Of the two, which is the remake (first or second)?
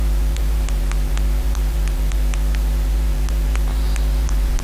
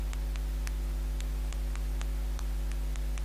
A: first